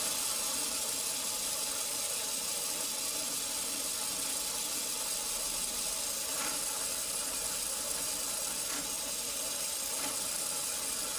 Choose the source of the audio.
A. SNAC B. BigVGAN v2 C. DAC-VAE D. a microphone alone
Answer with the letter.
D